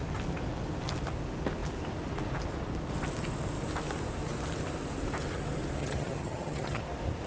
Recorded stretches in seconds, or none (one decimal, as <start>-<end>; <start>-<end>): 0.0-5.8; 6.8-7.3

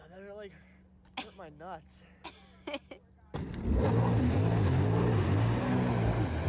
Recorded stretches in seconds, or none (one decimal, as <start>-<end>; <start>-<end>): 0.0-6.5

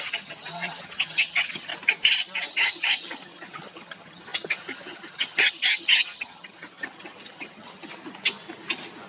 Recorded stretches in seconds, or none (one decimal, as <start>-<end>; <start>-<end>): 1.7-2.5; 7.9-9.1

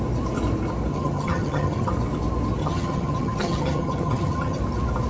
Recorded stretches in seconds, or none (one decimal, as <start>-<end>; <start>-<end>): 0.0-0.9; 1.9-2.6; 4.6-5.1

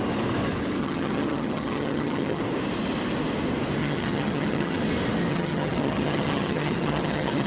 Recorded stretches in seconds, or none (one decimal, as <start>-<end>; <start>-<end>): 0.0-0.8; 2.4-3.8; 4.8-5.3

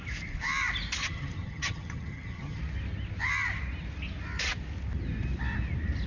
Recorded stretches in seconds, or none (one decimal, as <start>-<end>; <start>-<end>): 0.0-1.0; 2.6-6.1